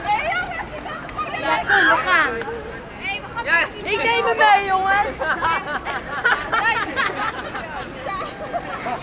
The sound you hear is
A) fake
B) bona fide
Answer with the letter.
B